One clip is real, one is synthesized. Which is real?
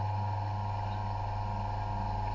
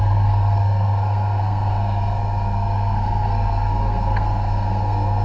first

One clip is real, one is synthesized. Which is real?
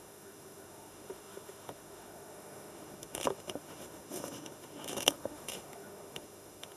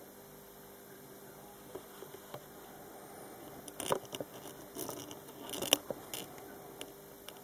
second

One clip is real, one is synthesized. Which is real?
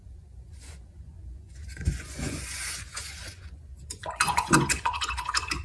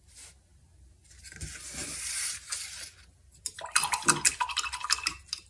second